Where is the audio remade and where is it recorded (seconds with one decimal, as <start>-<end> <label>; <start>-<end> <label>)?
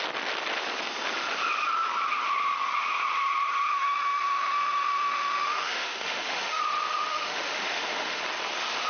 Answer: 0.0-3.7 recorded; 3.7-6.6 remade; 6.6-7.1 recorded; 7.1-8.2 remade; 8.2-8.9 recorded